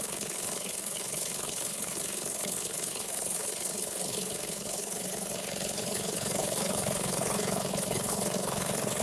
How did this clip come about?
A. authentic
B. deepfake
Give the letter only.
B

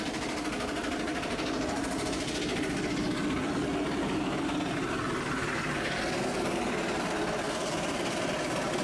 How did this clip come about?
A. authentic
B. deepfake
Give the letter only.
A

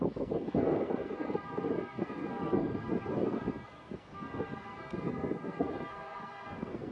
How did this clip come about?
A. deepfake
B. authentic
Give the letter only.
A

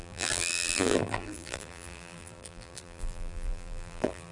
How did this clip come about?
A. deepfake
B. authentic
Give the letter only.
A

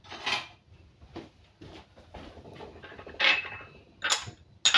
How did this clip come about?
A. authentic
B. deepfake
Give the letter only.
A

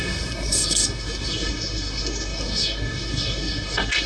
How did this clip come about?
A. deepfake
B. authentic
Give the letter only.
A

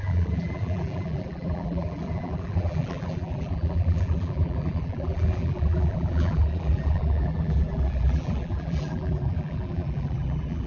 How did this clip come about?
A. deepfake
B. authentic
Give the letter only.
A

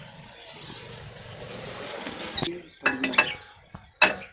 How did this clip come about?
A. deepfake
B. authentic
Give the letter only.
B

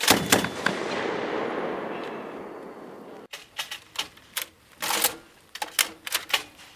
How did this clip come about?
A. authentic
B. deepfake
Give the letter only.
A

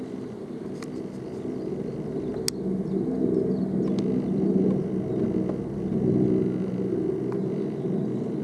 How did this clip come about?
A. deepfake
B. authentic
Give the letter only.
B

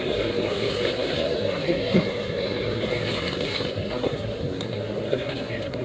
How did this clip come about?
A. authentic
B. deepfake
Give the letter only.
B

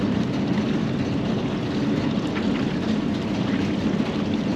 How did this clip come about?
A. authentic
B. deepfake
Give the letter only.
A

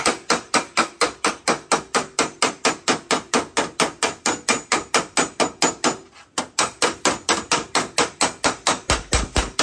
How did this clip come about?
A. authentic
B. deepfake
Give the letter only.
A